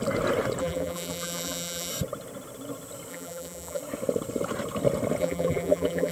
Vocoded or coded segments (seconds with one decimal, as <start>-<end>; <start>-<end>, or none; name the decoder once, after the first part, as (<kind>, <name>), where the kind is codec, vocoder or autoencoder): 0.6-1.9 (vocoder, BigVGAN v2); 3.1-3.8; 5.2-6.1